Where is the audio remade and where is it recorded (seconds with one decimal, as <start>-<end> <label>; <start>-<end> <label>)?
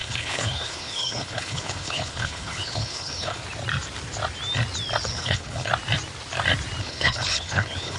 0.0-3.4 remade; 3.4-5.1 recorded; 5.1-5.7 remade; 5.7-6.8 recorded; 6.8-8.0 remade